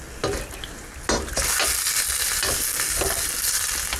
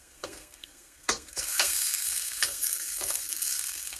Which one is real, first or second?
first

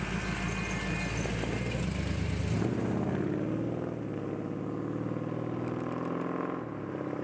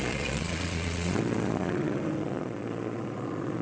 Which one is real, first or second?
first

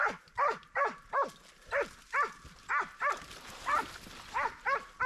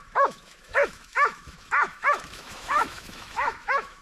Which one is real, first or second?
first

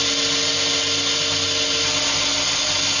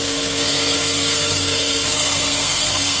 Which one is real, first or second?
first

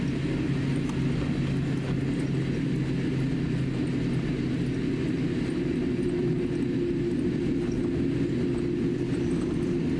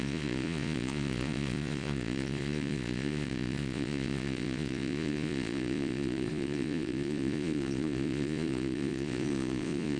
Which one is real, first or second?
first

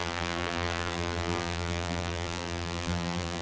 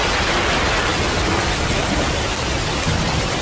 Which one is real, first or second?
second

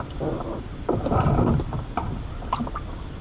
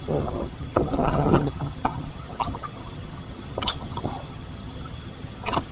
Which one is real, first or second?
first